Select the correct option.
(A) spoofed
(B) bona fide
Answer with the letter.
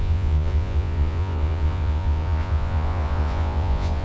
A